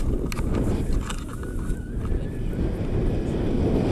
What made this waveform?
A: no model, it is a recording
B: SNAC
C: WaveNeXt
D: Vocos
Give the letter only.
A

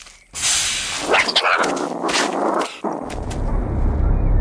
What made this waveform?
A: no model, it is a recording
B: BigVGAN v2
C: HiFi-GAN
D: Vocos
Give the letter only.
A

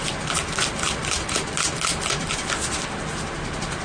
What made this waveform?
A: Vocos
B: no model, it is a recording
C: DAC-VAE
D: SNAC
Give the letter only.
B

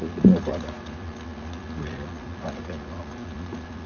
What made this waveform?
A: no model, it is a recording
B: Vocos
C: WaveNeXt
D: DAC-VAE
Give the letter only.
B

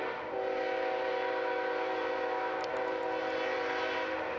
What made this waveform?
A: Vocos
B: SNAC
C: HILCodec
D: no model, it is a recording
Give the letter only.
D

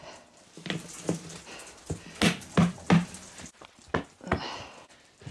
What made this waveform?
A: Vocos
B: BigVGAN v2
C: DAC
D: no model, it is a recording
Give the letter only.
D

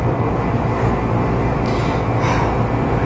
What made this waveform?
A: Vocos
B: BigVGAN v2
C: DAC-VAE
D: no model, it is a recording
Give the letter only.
D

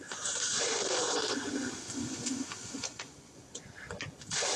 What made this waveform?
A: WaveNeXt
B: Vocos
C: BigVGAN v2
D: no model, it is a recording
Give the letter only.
B